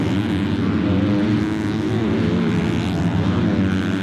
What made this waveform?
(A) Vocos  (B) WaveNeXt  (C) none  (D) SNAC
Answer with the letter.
C